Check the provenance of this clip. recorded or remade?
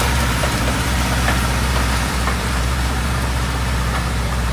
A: remade